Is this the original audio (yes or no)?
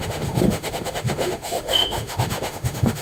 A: no